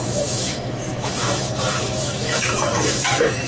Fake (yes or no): yes